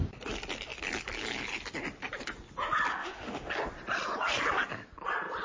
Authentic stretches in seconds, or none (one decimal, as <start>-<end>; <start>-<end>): 0.0-2.9; 3.5-5.4